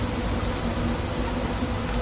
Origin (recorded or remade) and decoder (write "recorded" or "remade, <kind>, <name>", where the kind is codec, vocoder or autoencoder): recorded